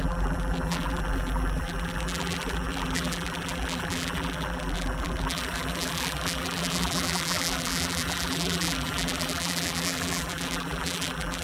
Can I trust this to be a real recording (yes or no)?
no